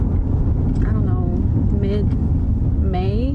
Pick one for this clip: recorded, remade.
recorded